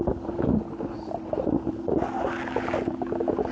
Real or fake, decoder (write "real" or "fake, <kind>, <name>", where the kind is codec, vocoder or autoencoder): real